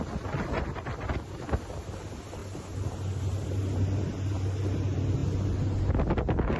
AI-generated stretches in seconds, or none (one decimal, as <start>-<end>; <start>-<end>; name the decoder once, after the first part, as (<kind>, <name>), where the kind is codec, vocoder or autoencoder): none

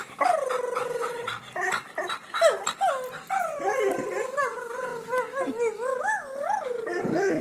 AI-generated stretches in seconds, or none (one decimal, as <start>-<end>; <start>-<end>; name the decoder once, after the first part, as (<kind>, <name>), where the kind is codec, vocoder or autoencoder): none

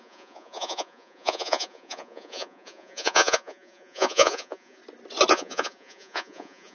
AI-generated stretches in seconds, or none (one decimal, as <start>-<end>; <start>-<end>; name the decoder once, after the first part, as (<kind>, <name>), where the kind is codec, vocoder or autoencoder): 0.0-4.8 (vocoder, Vocos); 5.3-6.7

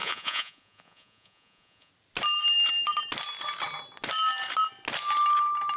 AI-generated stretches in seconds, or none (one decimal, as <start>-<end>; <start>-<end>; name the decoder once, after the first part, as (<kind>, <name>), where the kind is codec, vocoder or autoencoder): 0.0-1.9 (vocoder, Vocos)

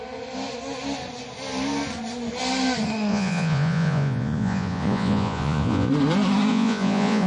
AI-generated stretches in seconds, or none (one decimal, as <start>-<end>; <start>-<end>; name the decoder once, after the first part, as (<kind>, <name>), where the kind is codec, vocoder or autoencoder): 3.1-5.9 (vocoder, Vocos); 6.5-7.3

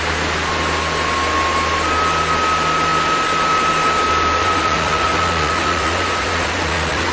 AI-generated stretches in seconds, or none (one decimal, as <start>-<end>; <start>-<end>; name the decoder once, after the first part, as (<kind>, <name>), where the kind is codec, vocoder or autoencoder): 4.4-7.1 (vocoder, Vocos)

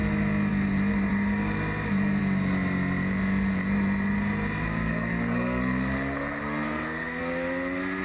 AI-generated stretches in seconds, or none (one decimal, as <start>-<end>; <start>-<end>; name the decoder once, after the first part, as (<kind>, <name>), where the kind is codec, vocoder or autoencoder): 4.9-7.2 (codec, SNAC)